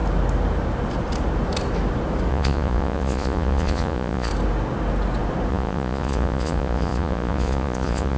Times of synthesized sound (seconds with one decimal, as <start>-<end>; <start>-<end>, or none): 2.3-4.3; 5.5-8.2